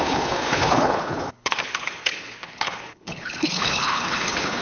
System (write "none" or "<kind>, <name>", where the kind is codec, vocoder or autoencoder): codec, HILCodec